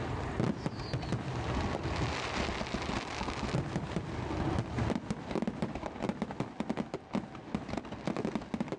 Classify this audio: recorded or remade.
recorded